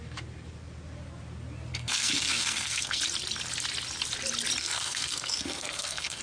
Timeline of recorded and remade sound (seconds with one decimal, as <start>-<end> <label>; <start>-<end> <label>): 0.0-1.7 recorded; 1.7-3.0 remade; 3.0-4.6 recorded; 4.6-6.2 remade